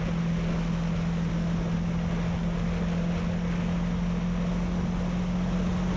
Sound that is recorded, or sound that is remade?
recorded